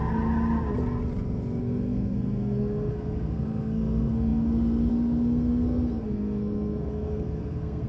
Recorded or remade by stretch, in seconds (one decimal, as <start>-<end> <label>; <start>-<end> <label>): 0.0-1.6 recorded; 1.6-7.9 remade